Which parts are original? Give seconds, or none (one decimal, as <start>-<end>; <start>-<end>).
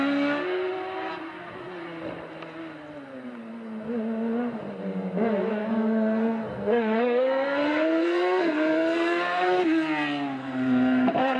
0.0-5.6; 9.6-10.4